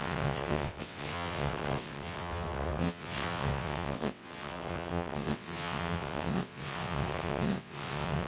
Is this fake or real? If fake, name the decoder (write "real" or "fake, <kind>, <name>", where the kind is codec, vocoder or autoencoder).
fake, vocoder, WaveNeXt